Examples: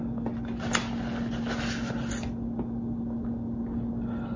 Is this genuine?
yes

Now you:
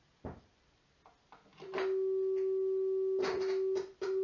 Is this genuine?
yes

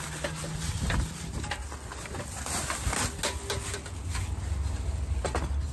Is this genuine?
yes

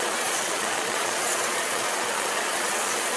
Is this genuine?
no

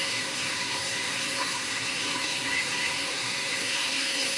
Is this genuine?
no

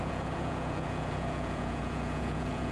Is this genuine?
no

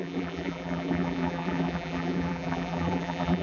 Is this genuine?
no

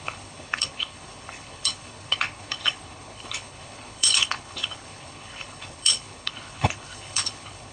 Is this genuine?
no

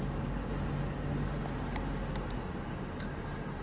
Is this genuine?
yes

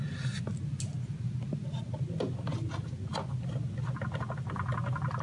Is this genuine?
yes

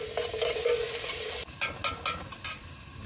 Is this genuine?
yes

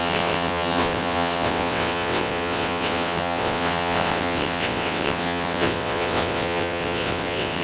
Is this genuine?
no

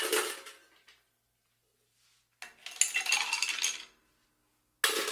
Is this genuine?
yes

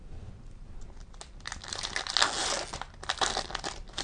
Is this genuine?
yes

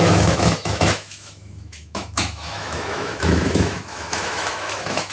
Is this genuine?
no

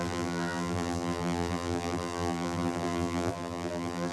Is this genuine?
no